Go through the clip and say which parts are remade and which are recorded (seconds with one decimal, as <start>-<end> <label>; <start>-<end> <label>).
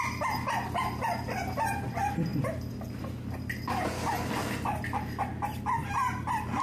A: 0.0-6.6 recorded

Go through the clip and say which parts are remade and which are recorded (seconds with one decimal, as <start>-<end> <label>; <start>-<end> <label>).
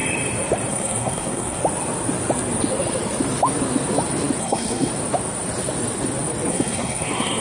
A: 0.0-0.7 recorded; 0.7-1.6 remade; 1.6-4.4 recorded; 4.4-4.9 remade; 4.9-6.5 recorded; 6.5-7.4 remade